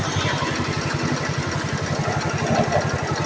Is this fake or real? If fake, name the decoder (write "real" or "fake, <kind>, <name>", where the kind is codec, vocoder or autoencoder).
real